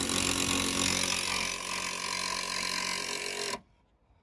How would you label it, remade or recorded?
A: recorded